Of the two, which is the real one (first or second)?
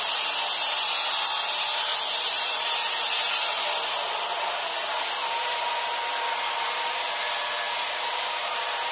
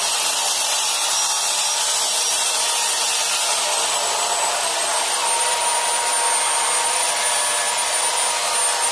second